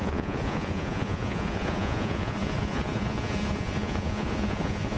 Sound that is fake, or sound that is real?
fake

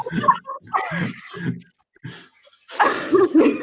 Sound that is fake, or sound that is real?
real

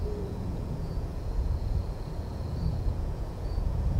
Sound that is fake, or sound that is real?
fake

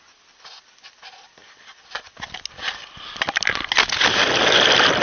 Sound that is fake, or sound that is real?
real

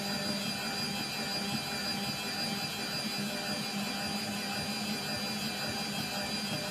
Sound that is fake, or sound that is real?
real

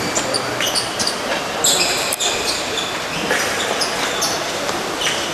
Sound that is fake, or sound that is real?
real